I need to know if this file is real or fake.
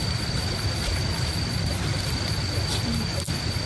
real